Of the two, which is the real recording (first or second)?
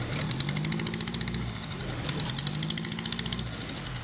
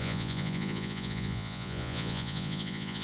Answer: first